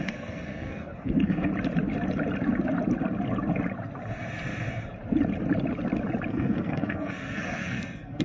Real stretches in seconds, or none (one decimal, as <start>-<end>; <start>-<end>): 1.5-6.3